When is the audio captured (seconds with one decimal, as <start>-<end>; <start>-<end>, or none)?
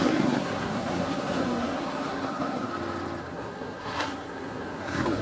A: 2.7-3.2